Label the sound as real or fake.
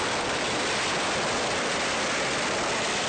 real